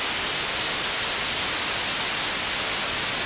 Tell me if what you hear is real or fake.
real